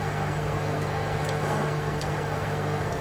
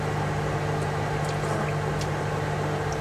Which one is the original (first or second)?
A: second